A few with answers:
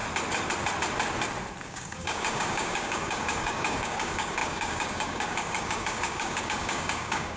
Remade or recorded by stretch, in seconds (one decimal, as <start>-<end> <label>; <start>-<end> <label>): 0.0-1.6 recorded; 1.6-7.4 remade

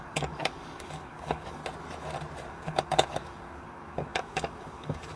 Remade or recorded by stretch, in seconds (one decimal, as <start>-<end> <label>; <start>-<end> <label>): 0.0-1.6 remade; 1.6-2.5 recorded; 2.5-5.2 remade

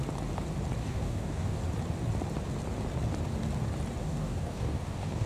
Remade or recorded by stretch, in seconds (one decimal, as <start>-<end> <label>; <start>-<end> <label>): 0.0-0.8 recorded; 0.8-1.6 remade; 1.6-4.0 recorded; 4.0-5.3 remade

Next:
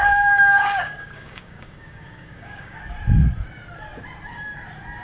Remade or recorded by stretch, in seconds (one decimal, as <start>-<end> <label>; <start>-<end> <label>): 0.0-2.8 remade; 2.8-5.0 recorded